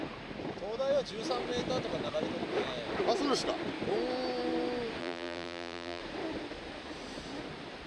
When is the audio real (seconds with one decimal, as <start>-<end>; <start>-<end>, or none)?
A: 0.0-5.0; 6.0-7.9